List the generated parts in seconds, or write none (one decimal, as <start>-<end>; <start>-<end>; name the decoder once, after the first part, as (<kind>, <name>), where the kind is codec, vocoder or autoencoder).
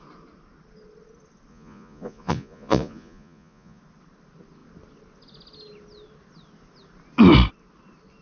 1.5-3.8 (vocoder, Vocos)